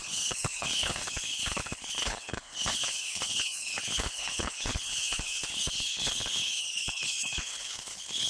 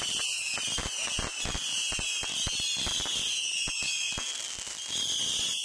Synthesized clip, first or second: first